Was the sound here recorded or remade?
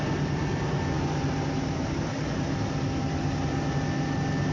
recorded